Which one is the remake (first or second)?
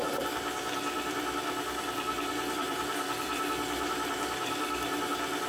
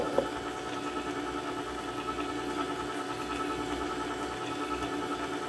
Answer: first